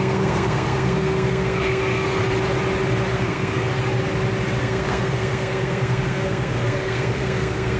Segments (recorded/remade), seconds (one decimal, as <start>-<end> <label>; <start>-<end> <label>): 0.0-2.2 remade; 2.2-3.1 recorded; 3.1-3.7 remade; 3.7-4.6 recorded; 4.6-7.8 remade